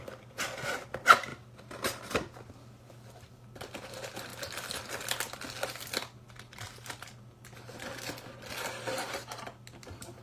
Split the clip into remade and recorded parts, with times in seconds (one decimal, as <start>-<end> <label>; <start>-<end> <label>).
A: 0.0-10.2 recorded